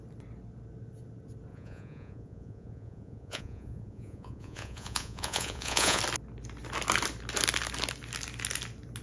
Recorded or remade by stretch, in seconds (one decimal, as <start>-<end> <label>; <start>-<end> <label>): 0.0-1.5 recorded; 1.5-6.0 remade; 6.0-9.0 recorded